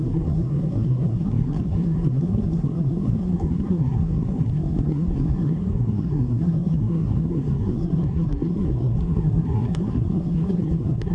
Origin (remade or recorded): remade